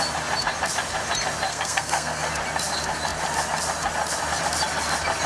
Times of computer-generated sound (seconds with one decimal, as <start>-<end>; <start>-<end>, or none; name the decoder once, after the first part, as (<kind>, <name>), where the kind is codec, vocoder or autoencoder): 1.5-2.3 (codec, SNAC)